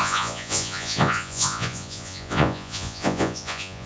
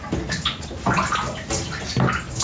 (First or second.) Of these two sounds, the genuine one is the second